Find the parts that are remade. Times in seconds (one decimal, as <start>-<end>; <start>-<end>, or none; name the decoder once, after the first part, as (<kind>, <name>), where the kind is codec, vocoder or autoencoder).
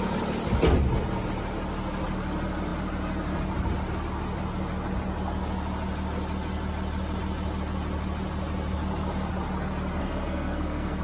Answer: 10.0-11.0 (codec, SNAC)